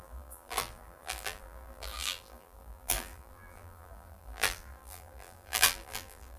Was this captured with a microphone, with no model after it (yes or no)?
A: no